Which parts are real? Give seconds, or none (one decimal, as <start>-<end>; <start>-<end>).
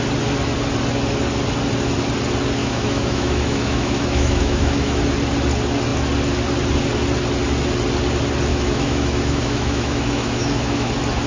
0.0-2.6; 5.0-8.5; 10.9-11.3